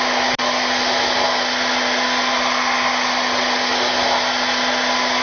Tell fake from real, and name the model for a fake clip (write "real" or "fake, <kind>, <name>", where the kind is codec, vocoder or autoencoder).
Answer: real